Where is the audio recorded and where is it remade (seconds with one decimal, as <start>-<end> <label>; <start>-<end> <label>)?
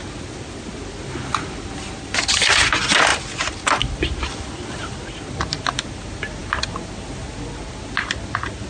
0.0-8.7 recorded